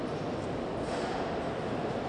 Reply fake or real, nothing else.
real